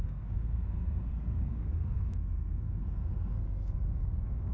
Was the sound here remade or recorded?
remade